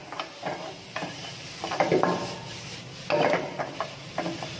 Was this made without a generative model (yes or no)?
yes